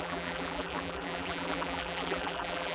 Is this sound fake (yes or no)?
yes